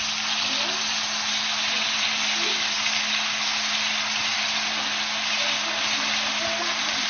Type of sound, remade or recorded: recorded